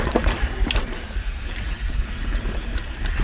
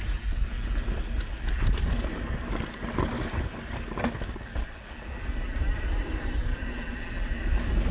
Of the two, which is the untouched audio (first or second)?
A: second